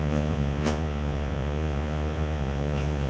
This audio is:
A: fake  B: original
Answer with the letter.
A